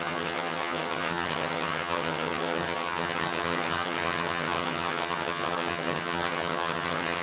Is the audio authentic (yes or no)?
no